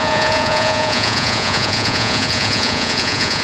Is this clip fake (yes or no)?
yes